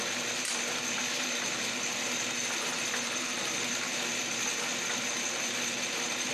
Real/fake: real